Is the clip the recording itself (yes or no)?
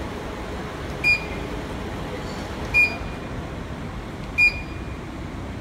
yes